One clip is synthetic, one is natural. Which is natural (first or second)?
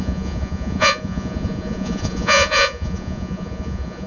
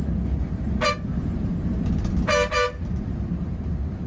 second